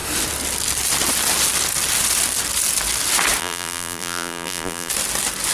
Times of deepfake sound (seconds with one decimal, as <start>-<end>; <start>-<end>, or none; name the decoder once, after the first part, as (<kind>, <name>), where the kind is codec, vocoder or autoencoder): 3.4-4.9 (vocoder, BigVGAN v2)

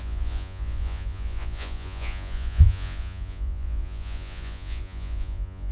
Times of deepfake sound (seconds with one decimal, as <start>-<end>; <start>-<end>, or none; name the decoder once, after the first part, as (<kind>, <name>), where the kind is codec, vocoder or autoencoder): 0.0-5.7 (vocoder, Vocos)

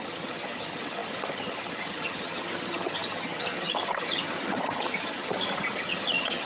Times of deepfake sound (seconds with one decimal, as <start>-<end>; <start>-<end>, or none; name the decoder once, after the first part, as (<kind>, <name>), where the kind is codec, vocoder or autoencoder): 0.0-6.5 (vocoder, HiFi-GAN)

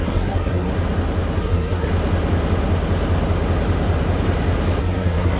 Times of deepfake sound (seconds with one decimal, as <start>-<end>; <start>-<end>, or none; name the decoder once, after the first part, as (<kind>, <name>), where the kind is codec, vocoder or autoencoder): 0.0-0.7 (codec, SNAC); 1.4-1.9; 4.8-5.4

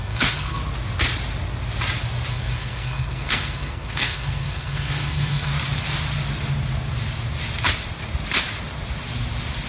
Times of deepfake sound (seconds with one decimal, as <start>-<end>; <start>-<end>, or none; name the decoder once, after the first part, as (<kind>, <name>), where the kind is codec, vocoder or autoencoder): 0.0-0.6 (codec, SNAC); 2.3-5.5

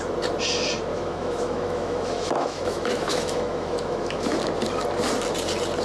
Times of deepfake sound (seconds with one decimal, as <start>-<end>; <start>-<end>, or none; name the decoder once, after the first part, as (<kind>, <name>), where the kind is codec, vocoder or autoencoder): 0.9-4.4 (autoencoder, DAC-VAE)